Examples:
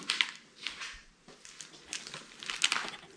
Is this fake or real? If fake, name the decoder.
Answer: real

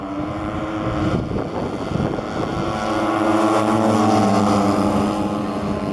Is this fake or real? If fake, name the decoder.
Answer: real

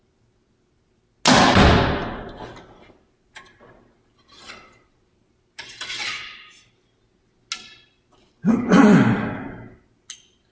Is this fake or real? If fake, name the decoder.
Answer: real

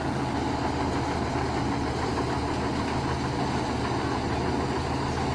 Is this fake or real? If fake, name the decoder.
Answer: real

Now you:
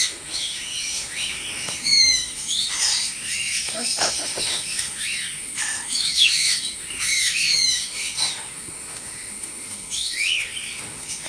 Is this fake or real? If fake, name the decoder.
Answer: fake, autoencoder, DAC-VAE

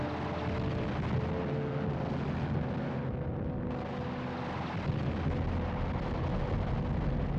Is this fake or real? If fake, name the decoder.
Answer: real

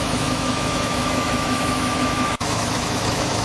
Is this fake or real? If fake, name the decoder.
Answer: fake, autoencoder, DAC-VAE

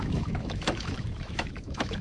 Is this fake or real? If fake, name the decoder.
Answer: fake, autoencoder, DAC-VAE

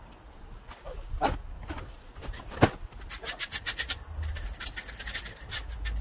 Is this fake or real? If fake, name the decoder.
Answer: real